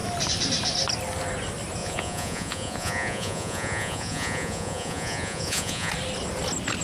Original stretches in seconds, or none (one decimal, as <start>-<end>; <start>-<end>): 0.0-1.8; 5.9-6.8